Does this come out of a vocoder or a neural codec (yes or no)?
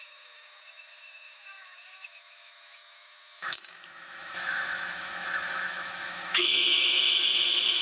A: yes